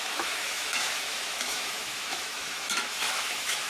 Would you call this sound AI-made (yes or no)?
yes